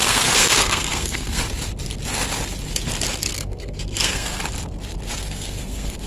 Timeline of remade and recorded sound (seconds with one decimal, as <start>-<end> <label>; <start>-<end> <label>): 0.0-1.4 remade; 1.4-3.3 recorded; 3.3-4.4 remade; 4.4-5.2 recorded; 5.2-6.1 remade